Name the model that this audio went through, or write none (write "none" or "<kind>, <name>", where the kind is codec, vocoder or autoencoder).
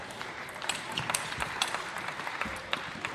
vocoder, BigVGAN v2